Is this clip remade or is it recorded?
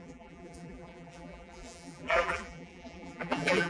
remade